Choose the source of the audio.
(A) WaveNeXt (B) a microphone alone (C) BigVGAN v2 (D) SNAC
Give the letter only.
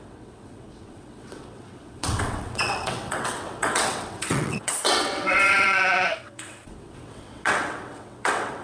A